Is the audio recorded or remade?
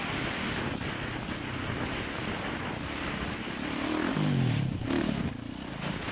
recorded